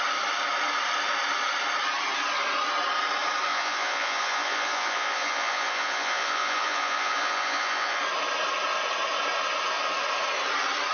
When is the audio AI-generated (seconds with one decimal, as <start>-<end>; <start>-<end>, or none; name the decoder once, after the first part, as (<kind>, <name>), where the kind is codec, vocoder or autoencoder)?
3.5-8.0 (vocoder, Vocos)